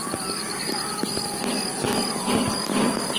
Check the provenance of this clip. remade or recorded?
recorded